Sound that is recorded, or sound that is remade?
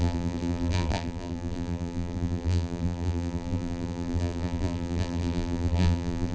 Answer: remade